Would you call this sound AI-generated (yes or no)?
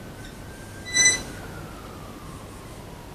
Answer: no